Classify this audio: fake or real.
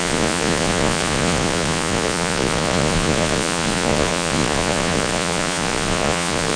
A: fake